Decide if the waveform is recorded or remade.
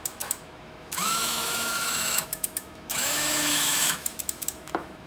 remade